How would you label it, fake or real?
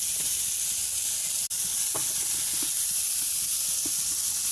real